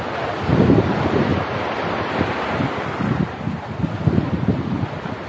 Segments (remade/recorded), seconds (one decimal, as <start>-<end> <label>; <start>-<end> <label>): 0.0-5.3 recorded